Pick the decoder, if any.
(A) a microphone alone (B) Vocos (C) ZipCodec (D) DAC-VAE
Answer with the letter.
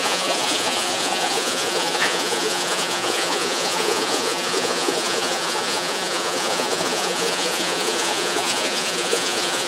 B